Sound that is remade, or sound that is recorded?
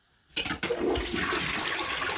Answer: recorded